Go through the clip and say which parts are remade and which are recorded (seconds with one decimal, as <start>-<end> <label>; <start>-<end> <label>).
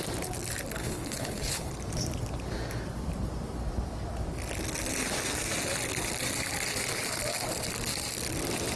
0.0-0.8 recorded; 0.8-1.7 remade; 1.7-8.8 recorded